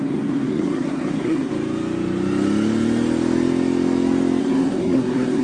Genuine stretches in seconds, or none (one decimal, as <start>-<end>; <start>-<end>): 1.5-4.4